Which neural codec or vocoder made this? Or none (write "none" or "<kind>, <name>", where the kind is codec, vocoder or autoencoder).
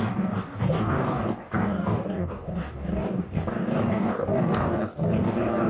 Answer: codec, DAC